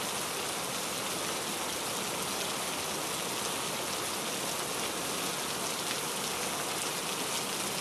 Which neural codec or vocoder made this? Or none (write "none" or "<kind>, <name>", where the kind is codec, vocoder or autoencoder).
none